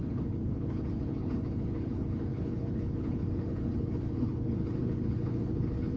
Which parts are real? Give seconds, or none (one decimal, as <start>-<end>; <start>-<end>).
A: none